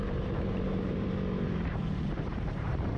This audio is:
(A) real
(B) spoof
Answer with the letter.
B